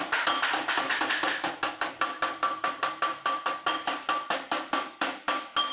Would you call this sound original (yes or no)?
yes